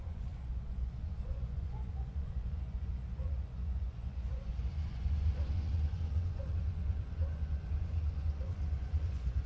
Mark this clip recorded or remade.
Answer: remade